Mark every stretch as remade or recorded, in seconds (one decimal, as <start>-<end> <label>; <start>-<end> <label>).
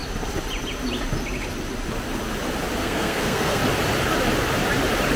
0.0-2.8 recorded; 2.8-3.6 remade; 3.6-5.2 recorded